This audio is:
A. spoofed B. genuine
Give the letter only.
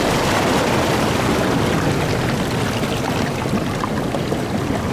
B